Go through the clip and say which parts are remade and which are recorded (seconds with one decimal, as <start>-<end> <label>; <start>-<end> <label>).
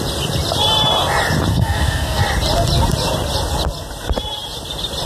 0.0-1.5 recorded; 1.5-2.2 remade; 2.2-5.1 recorded